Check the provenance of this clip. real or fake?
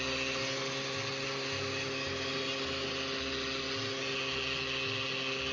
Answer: real